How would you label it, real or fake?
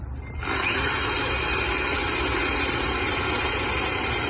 real